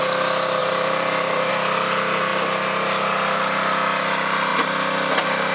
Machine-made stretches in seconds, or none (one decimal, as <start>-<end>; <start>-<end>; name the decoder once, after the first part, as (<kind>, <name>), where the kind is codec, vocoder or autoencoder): 0.6-1.5 (vocoder, BigVGAN v2)